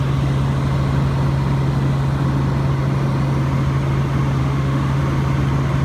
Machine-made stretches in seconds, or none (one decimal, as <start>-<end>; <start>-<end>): 4.4-5.0

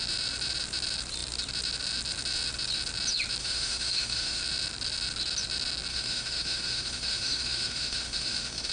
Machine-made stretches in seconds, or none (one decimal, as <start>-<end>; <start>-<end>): 3.4-4.4; 5.9-8.7